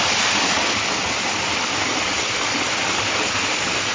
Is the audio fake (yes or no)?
no